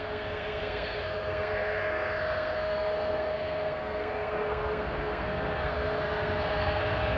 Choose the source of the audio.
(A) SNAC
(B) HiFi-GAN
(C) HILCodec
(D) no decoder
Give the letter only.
A